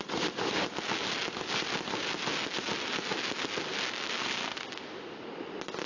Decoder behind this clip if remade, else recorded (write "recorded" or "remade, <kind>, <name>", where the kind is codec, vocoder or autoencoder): remade, vocoder, BigVGAN v2